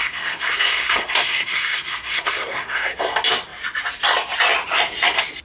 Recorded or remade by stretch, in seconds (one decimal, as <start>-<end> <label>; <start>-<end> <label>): 0.0-3.0 remade; 3.0-5.4 recorded